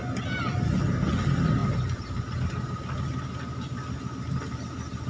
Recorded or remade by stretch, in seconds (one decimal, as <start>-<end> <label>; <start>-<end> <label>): 0.0-5.1 recorded